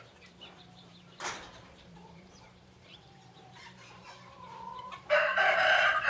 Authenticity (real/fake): fake